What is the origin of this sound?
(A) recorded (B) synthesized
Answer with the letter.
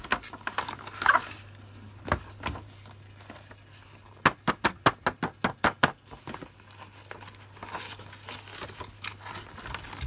A